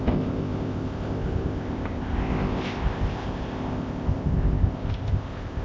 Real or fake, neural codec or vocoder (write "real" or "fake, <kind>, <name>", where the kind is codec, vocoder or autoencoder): fake, codec, ZipCodec